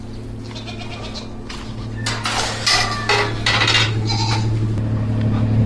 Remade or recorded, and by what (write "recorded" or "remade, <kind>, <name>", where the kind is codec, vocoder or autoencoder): recorded